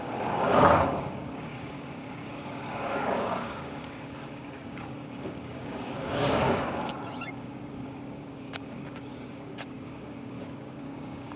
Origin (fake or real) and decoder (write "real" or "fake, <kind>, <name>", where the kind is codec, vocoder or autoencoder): fake, codec, DAC